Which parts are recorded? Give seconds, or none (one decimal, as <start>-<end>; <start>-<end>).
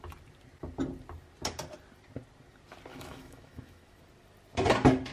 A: 0.0-2.9; 4.0-5.1